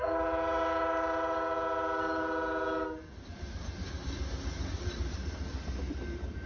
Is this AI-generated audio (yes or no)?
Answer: no